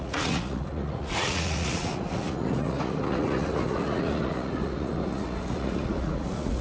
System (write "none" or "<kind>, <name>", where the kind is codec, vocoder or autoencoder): vocoder, Vocos